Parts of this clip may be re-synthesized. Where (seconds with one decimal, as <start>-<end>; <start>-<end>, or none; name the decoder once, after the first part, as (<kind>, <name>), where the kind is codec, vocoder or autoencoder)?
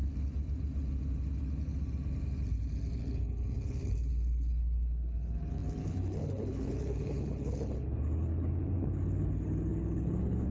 3.0-10.5 (codec, HILCodec)